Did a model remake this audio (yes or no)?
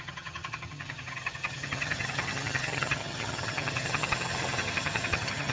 yes